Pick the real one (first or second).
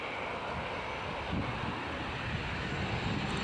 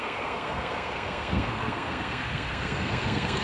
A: first